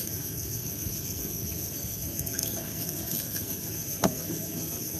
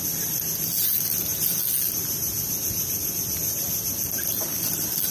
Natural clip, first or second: second